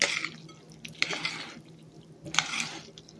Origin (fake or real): real